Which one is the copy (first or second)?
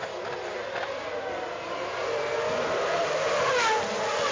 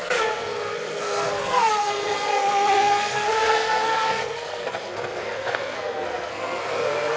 second